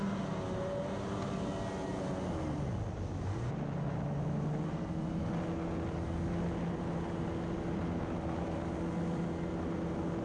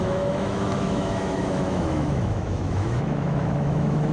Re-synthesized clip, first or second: second